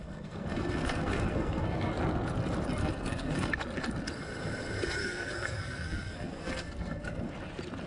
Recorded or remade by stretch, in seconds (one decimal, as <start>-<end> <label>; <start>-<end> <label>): 0.0-1.9 remade; 1.9-2.8 recorded; 2.8-3.5 remade; 3.5-5.0 recorded; 5.0-7.3 remade; 7.3-7.9 recorded